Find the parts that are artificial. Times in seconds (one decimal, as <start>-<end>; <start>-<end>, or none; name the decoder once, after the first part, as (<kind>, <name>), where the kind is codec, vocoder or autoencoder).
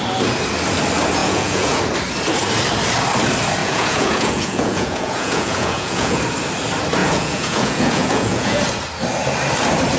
1.2-1.8 (vocoder, Vocos); 3.6-6.2; 7.0-8.6